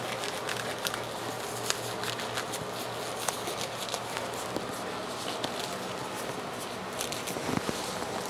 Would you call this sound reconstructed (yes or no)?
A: no